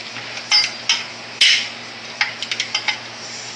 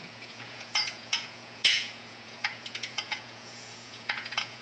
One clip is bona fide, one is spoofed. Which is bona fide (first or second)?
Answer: first